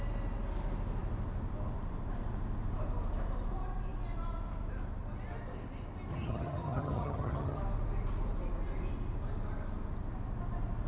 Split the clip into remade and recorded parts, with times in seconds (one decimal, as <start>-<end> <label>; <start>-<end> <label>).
0.0-6.1 recorded; 6.1-7.6 remade; 7.6-10.9 recorded

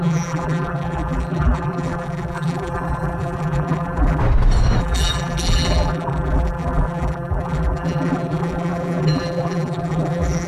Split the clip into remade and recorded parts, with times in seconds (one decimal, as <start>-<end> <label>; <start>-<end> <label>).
0.0-4.2 remade; 4.2-4.8 recorded; 4.8-10.5 remade

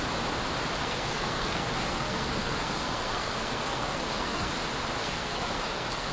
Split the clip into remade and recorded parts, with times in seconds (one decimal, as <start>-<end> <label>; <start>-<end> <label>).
0.0-0.8 recorded; 0.8-4.5 remade; 4.5-5.0 recorded; 5.0-6.1 remade

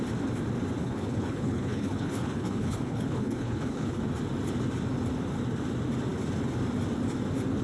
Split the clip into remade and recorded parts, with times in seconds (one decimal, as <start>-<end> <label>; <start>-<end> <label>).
0.0-0.8 recorded; 0.8-4.0 remade; 4.0-7.6 recorded

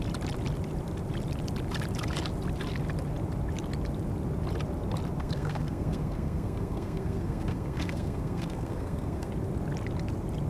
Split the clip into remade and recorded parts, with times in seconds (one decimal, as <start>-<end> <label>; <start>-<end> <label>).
0.0-5.2 recorded; 5.2-9.3 remade; 9.3-10.5 recorded

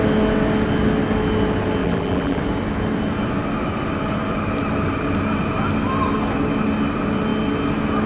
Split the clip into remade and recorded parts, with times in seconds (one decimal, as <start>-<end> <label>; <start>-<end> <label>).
0.0-1.8 recorded; 1.8-2.4 remade; 2.4-8.1 recorded